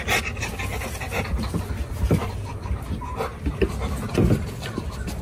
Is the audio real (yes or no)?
yes